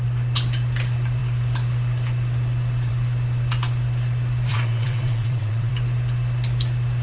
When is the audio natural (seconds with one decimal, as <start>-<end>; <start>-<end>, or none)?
0.0-4.5; 5.7-7.0

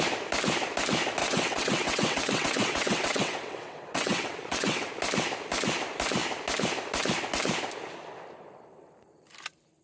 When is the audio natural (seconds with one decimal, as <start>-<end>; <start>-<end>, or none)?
0.0-1.2; 4.9-9.8

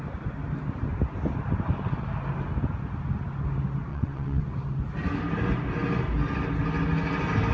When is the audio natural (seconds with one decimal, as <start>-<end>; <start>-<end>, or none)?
0.0-3.9; 4.4-7.5